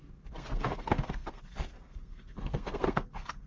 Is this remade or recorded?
remade